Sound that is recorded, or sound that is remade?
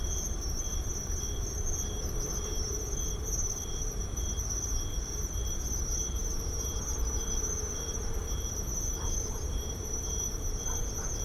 remade